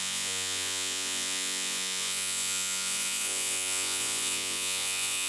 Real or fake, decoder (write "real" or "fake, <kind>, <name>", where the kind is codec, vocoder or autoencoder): fake, vocoder, Vocos